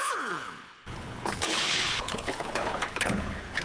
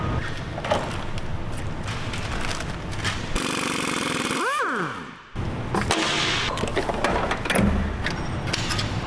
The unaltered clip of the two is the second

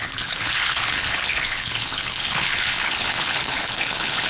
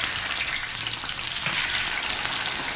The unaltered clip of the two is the second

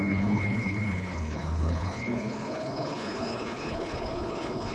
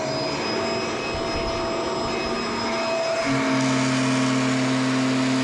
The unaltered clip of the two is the second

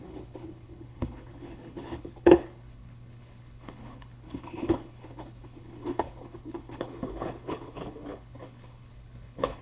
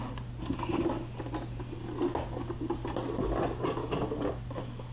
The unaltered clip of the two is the second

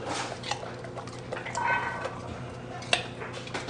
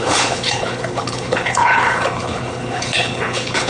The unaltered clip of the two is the first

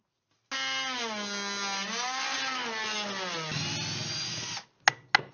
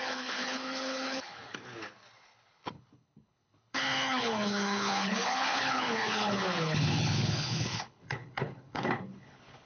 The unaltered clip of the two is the first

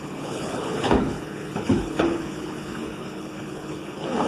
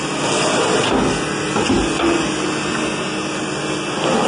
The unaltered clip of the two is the second